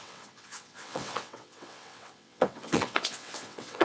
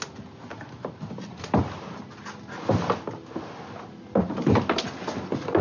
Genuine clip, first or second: second